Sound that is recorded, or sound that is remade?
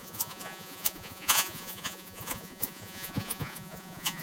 remade